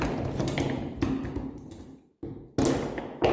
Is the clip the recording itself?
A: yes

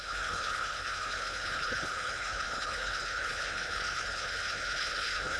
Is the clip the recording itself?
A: no